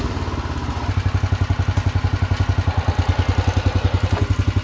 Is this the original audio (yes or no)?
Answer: yes